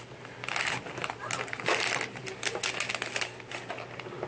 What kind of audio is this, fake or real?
real